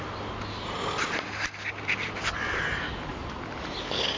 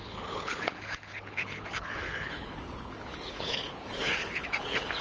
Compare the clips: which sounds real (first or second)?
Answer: first